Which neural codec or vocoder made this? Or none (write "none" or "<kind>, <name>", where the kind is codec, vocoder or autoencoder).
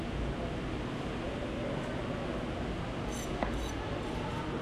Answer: none